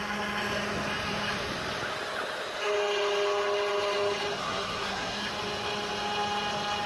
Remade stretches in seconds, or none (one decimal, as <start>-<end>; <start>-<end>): 4.4-5.3

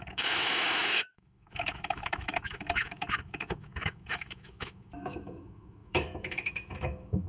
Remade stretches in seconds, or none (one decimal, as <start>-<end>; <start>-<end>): 0.0-7.3

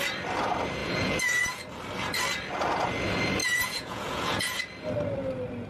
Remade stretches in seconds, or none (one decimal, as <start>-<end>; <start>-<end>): 0.8-1.6; 3.4-4.6

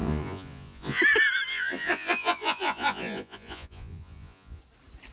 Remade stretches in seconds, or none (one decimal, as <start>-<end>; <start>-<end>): 0.0-1.0; 1.5-4.6

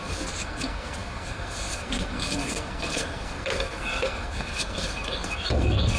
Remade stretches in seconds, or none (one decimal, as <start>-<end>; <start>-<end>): 0.0-6.0

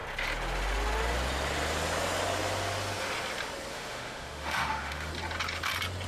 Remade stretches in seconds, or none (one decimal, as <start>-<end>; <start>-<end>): 3.7-5.1